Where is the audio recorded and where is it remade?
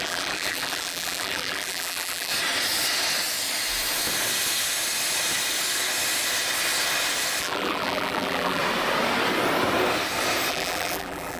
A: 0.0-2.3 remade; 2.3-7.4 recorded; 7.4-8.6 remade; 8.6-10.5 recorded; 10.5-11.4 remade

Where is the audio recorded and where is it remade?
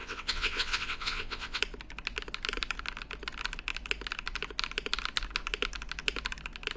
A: 0.0-1.6 remade; 1.6-6.8 recorded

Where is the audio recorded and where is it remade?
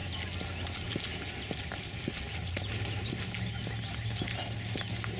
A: 0.0-5.2 recorded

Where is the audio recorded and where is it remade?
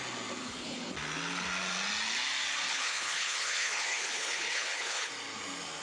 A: 0.0-0.4 recorded; 0.4-0.9 remade; 0.9-2.7 recorded; 2.7-5.1 remade; 5.1-5.8 recorded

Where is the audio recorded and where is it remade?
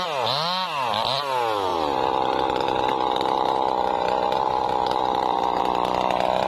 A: 0.0-1.7 recorded; 1.7-5.6 remade; 5.6-6.5 recorded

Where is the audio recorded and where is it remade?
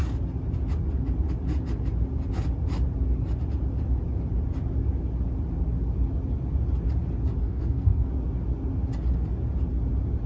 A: 0.0-7.4 recorded; 7.4-8.1 remade; 8.1-10.3 recorded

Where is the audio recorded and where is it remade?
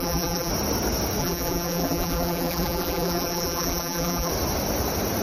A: 0.0-0.5 remade; 0.5-1.2 recorded; 1.2-4.3 remade; 4.3-5.2 recorded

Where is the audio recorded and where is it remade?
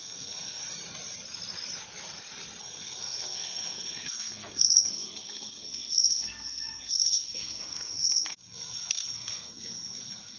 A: 0.0-0.6 remade; 0.6-2.6 recorded; 2.6-10.4 remade